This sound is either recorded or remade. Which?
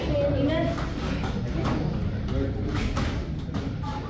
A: recorded